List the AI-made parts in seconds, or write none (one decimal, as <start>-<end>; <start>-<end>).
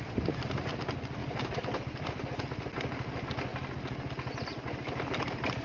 1.2-2.4